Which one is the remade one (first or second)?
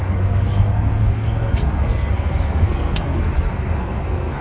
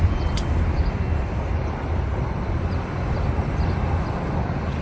first